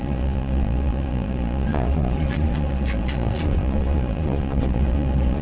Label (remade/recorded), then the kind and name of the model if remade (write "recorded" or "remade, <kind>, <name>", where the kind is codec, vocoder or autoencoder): remade, vocoder, Vocos